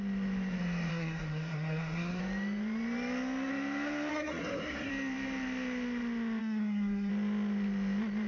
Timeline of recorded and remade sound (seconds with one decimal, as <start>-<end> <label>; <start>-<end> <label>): 0.0-0.9 recorded; 0.9-2.2 remade; 2.2-4.1 recorded; 4.1-4.9 remade; 4.9-6.4 recorded; 6.4-7.1 remade; 7.1-8.3 recorded